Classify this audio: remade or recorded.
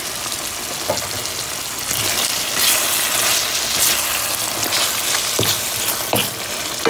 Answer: recorded